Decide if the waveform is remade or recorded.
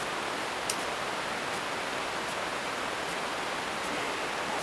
recorded